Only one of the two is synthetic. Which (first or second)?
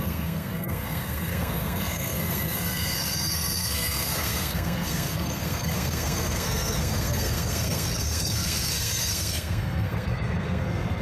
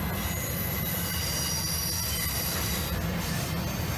first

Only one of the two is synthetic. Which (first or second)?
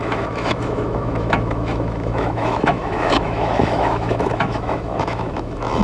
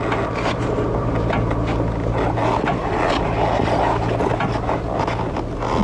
first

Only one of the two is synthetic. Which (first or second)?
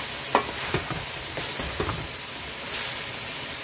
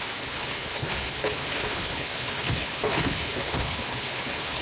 second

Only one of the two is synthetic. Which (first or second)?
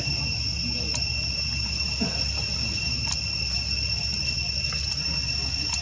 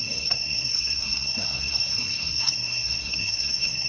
second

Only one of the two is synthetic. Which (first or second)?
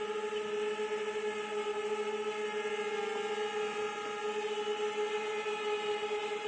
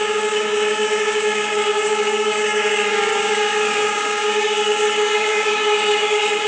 second